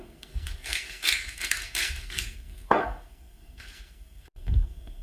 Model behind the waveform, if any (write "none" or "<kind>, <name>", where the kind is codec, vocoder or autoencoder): codec, SNAC